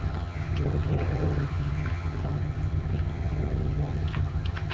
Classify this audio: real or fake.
fake